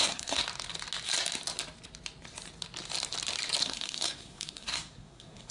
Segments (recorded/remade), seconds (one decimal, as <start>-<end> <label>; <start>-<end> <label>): 0.0-0.4 remade; 0.4-3.6 recorded; 3.6-5.5 remade